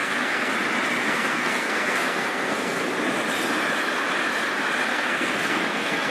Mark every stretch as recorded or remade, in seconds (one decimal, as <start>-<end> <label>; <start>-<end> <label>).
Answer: 0.0-0.5 remade; 0.5-1.0 recorded; 1.0-2.9 remade; 2.9-4.9 recorded; 4.9-6.1 remade